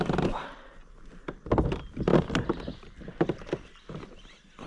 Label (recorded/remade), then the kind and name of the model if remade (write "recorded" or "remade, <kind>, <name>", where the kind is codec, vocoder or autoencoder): recorded